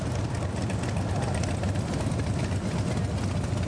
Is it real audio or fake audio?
real